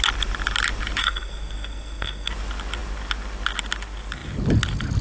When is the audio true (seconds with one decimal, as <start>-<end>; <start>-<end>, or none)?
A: 0.0-1.0; 2.3-5.0